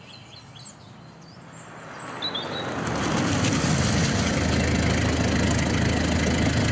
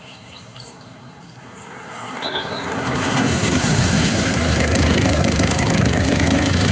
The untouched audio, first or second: first